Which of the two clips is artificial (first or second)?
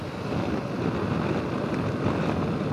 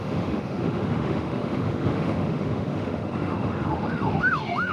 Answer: second